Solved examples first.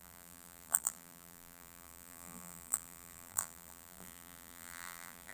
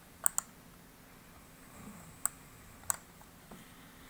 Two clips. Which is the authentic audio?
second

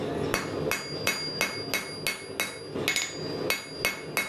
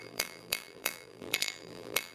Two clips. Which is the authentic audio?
first